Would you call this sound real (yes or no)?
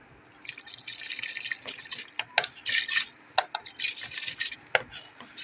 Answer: yes